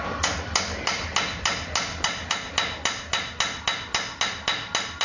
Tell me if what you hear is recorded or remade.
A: recorded